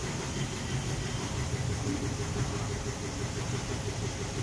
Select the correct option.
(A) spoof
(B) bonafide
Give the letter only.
B